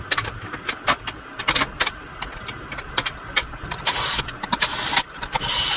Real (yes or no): yes